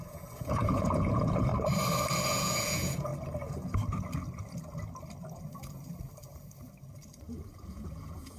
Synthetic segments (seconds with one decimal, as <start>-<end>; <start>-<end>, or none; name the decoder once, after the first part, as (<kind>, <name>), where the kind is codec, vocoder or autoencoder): 0.0-1.5 (vocoder, Vocos); 2.1-3.1; 7.7-8.4